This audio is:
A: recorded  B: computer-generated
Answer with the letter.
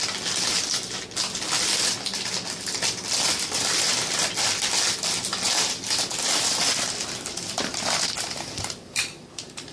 A